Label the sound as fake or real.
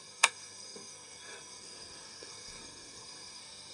fake